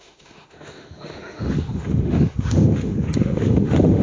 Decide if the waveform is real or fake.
fake